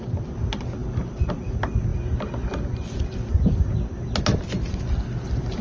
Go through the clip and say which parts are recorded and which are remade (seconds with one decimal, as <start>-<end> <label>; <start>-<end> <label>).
0.0-5.6 recorded